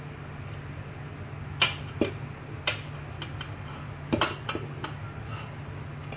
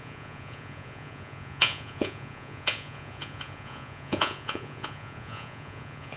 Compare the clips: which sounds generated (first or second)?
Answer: second